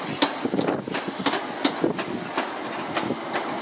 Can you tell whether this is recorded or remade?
recorded